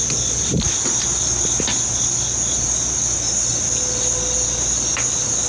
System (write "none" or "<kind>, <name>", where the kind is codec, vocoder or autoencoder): none